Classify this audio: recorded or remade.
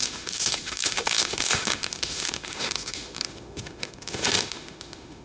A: remade